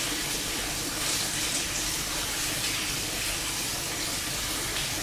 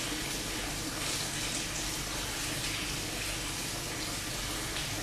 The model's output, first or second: first